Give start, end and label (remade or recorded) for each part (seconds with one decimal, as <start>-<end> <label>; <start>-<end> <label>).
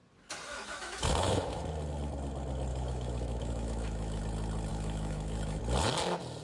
0.0-0.5 recorded; 0.5-1.6 remade; 1.6-2.7 recorded; 2.7-4.2 remade; 4.2-4.7 recorded; 4.7-5.6 remade; 5.6-6.4 recorded